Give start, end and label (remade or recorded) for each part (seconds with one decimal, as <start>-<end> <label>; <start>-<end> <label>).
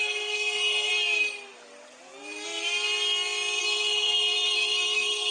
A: 0.0-0.9 remade; 0.9-3.6 recorded; 3.6-5.3 remade